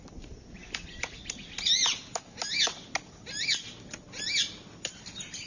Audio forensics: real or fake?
real